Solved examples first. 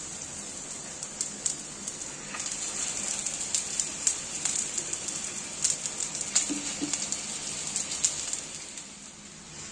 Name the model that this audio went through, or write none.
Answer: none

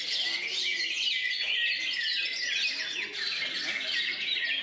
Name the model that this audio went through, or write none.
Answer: none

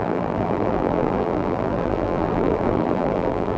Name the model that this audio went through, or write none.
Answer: vocoder, BigVGAN v2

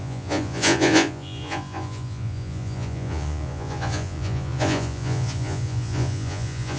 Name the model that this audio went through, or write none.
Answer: vocoder, Vocos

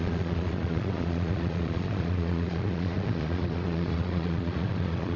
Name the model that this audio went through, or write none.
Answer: vocoder, Vocos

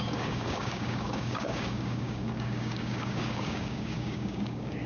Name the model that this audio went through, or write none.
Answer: codec, DAC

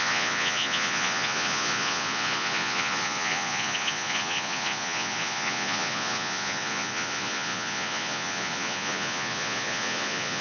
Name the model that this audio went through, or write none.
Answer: vocoder, Vocos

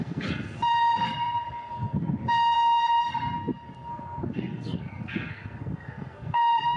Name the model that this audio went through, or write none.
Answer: codec, SNAC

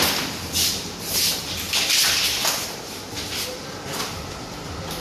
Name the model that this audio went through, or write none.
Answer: none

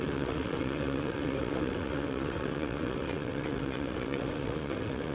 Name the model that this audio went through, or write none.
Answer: vocoder, WaveNeXt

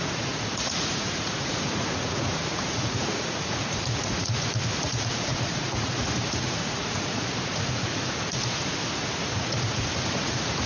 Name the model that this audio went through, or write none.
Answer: vocoder, Vocos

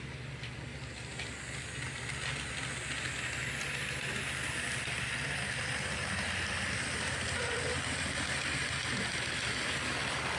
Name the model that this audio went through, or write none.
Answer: none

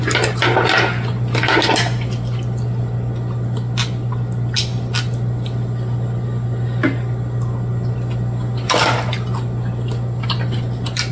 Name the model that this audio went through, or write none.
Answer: none